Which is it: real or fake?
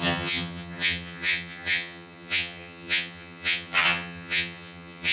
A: fake